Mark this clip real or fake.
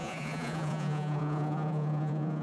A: fake